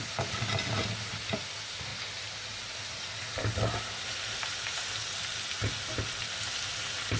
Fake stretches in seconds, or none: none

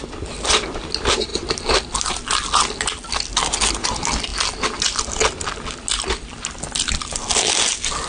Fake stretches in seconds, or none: none

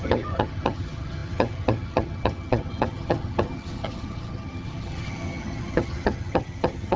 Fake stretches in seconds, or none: 0.0-7.0 (vocoder, HiFi-GAN)

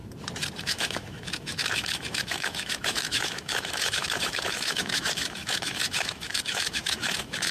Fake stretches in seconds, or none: 0.6-7.5 (autoencoder, DAC-VAE)

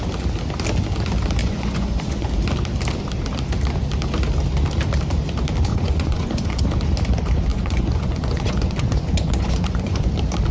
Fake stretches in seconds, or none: 1.4-2.3 (vocoder, Vocos); 5.7-6.6; 7.5-10.1

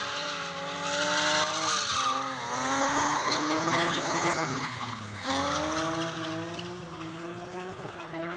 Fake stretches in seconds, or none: 2.8-5.3 (codec, HILCodec); 7.1-8.4

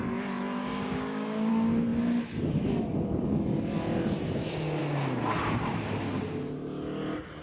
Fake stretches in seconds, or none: 0.6-1.5 (codec, DAC)

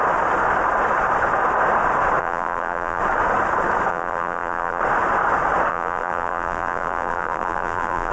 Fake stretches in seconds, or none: 2.2-3.0 (vocoder, BigVGAN v2); 3.9-4.8; 5.7-8.1